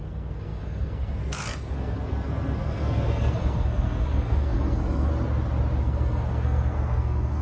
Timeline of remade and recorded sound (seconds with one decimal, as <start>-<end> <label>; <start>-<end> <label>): 0.0-5.1 remade; 5.1-5.8 recorded; 5.8-7.4 remade